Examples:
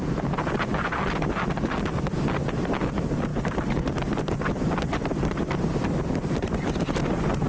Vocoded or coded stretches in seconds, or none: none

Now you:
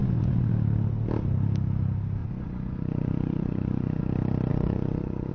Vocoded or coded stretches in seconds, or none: 0.0-0.5 (vocoder, Vocos); 2.2-4.0; 4.5-5.3

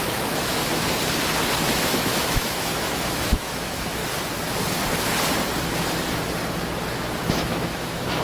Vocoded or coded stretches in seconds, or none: 0.0-0.6 (autoencoder, DAC-VAE); 1.7-4.0; 7.3-8.2

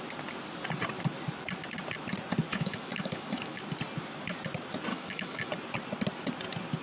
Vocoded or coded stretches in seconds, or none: 2.5-3.6 (autoencoder, DAC-VAE); 4.9-5.5

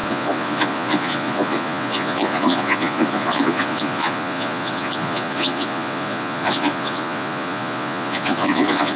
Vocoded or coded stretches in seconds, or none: 0.0-9.0 (vocoder, Vocos)

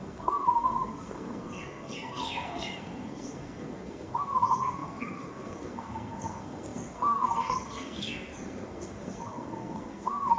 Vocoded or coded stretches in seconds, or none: 0.0-10.4 (codec, SNAC)

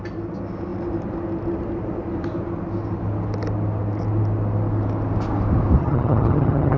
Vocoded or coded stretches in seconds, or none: 5.8-6.8 (vocoder, HiFi-GAN)